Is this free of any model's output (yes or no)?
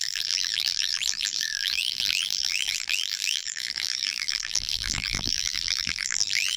no